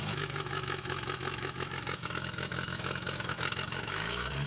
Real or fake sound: fake